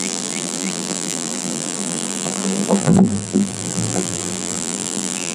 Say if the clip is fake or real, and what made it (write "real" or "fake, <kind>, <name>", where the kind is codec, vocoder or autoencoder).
fake, vocoder, BigVGAN v2